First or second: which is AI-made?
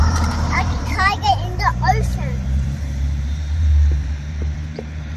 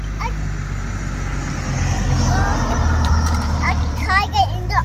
first